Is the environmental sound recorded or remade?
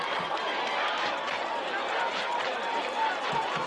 remade